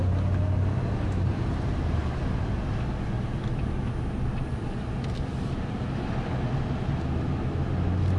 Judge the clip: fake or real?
real